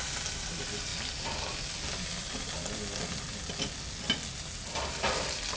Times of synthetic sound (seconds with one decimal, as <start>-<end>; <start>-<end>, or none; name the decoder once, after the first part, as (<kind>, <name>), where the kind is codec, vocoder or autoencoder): none